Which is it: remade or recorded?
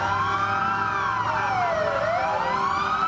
recorded